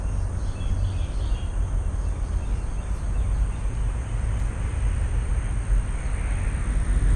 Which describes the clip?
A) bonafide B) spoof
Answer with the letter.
A